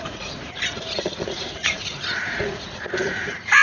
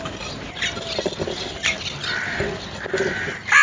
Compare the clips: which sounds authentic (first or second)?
second